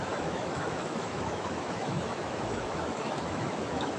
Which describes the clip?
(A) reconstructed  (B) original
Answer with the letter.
A